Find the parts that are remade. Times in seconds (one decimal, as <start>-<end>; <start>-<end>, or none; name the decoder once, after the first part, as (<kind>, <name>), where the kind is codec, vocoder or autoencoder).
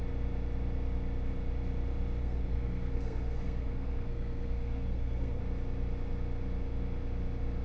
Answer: 2.2-5.4 (codec, SNAC)